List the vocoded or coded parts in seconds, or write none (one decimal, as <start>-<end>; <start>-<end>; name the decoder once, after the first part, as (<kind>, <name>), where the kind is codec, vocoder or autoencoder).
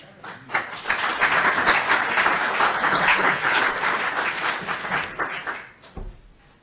2.8-3.6 (codec, HILCodec)